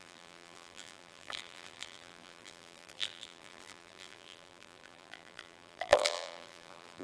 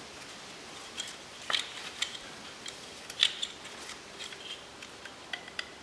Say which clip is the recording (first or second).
second